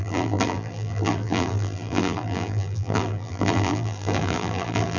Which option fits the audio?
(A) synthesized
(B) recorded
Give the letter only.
A